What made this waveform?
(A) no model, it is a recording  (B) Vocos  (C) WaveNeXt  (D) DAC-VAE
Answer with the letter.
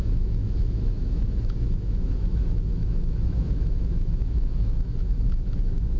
D